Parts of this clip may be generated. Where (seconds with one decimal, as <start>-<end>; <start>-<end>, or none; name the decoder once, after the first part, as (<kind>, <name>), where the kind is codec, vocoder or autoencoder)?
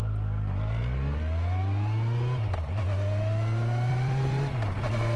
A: 0.0-0.8 (vocoder, BigVGAN v2); 3.9-5.2